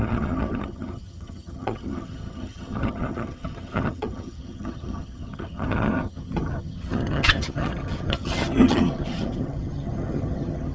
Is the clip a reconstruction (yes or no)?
yes